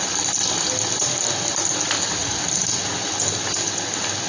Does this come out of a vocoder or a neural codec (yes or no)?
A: no